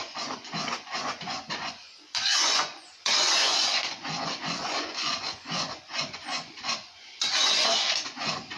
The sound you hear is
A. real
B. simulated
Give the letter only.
B